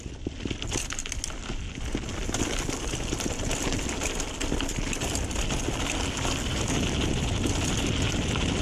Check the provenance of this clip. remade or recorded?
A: recorded